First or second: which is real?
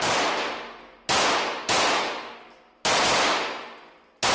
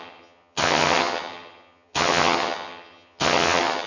first